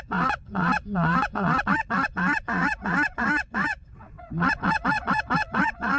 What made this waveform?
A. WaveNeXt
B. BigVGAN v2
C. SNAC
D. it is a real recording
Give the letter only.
A